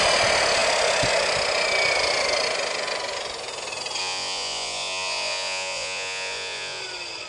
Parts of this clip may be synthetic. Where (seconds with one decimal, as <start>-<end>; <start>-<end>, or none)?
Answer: 4.0-6.8

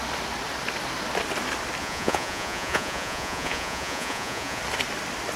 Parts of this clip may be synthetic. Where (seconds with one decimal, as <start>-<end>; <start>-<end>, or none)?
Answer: 1.8-4.6

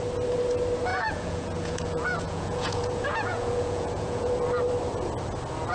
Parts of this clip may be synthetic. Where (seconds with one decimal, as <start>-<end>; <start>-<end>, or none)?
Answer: 0.9-4.3

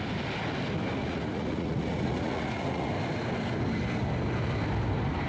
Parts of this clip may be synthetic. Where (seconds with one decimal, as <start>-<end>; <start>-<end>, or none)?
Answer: 1.0-2.9

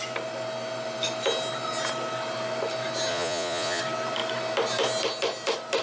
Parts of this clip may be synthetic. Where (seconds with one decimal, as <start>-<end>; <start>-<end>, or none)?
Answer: 3.1-3.8

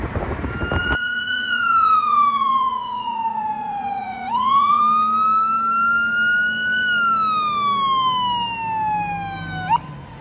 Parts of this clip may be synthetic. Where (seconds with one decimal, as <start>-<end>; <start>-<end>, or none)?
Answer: 0.8-4.8

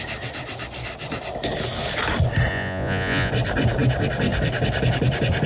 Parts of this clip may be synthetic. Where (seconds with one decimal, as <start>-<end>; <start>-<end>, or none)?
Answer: 2.5-3.3